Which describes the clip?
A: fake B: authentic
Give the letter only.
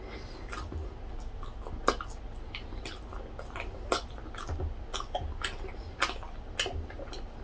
B